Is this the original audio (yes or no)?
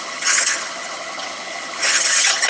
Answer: no